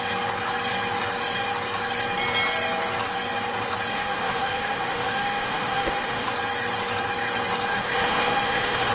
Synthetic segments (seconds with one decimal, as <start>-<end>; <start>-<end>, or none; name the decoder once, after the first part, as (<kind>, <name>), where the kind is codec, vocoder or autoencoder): 3.9-6.3 (autoencoder, DAC-VAE); 7.7-8.9